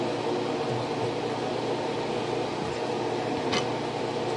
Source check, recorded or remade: recorded